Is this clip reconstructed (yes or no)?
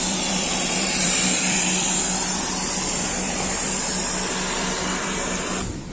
yes